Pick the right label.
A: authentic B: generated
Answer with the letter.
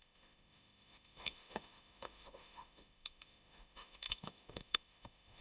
B